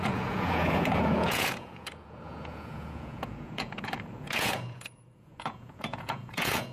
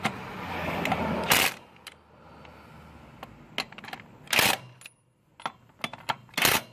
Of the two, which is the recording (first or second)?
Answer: second